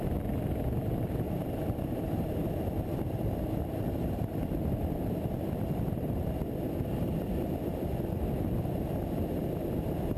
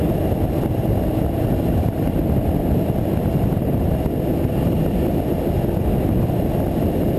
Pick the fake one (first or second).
first